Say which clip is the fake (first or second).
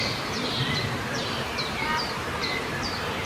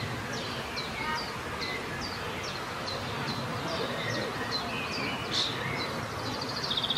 first